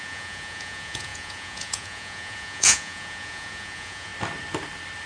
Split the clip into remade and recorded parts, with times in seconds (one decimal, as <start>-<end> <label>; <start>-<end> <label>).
0.0-4.1 remade; 4.1-5.1 recorded